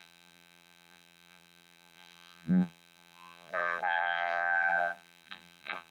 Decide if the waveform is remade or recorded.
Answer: remade